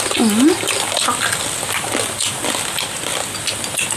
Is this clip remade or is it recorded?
recorded